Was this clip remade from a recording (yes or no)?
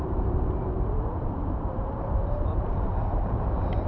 yes